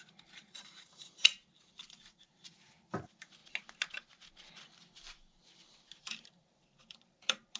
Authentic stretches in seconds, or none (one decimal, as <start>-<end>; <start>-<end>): 3.4-6.0